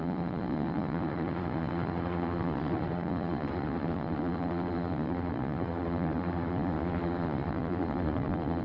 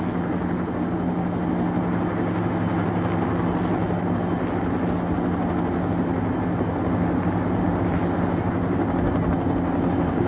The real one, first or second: second